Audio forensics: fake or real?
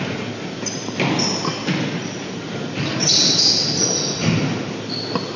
real